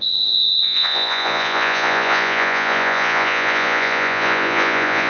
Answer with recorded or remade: remade